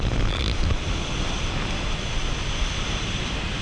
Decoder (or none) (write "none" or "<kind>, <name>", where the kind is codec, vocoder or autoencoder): none